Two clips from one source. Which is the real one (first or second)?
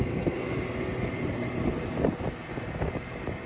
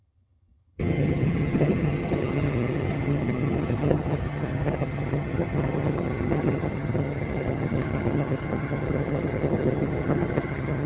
first